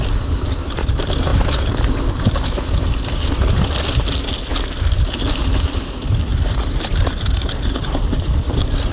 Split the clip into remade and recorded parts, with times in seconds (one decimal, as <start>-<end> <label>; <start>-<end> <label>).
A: 0.0-6.3 recorded; 6.3-8.9 remade